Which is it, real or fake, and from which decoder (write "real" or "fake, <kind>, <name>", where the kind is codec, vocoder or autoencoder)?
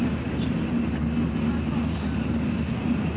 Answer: real